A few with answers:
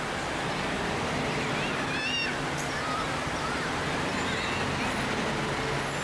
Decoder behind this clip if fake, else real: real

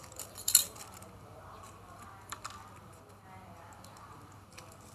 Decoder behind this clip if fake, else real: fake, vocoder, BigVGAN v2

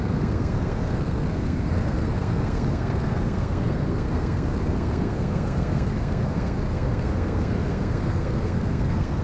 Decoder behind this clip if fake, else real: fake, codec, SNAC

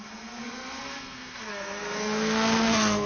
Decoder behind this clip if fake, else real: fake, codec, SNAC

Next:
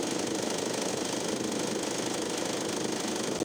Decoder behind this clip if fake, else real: real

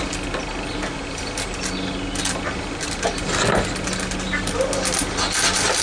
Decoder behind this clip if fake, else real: real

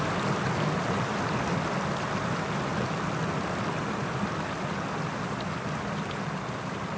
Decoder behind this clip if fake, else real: real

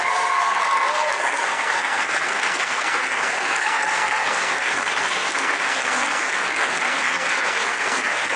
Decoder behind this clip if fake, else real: fake, codec, SNAC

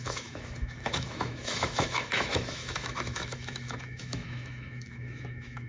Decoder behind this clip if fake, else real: fake, autoencoder, DAC-VAE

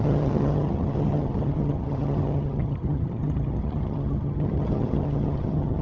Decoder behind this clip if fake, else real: fake, vocoder, HiFi-GAN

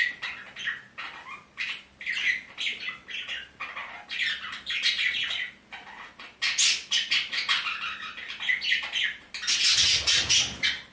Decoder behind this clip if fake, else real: real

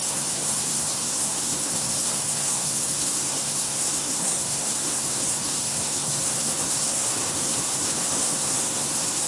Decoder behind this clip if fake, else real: fake, codec, SNAC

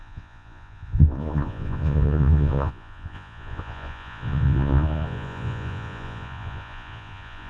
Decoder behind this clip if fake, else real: fake, vocoder, Vocos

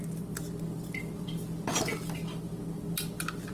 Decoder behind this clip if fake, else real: real